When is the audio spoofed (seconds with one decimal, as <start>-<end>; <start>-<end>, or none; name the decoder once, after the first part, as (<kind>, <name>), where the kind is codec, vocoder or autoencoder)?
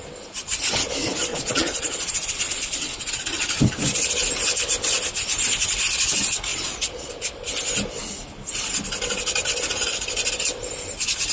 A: 1.3-3.2 (vocoder, Vocos); 6.5-7.1